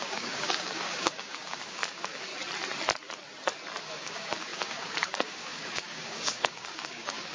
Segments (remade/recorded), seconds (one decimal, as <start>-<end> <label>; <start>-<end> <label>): 0.0-2.3 remade; 2.3-3.8 recorded; 3.8-7.3 remade